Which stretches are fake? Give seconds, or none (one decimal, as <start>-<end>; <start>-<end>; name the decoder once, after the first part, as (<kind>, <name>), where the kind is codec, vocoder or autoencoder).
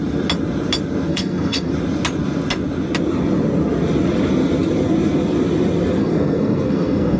1.1-1.7 (codec, SNAC); 6.0-7.2